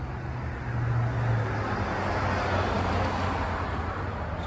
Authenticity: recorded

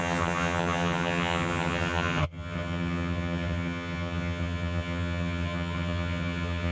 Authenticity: remade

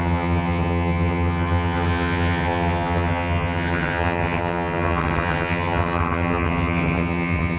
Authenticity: remade